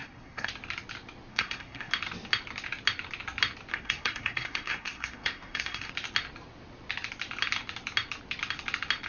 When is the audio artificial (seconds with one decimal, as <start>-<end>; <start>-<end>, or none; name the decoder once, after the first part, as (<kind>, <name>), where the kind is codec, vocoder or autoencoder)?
0.0-0.5 (codec, SNAC); 1.3-1.9; 3.7-5.9